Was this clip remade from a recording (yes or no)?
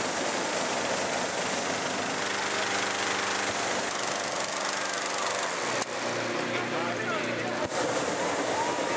yes